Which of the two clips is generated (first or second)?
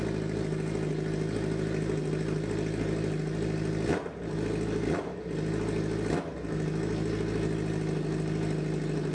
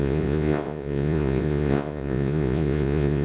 second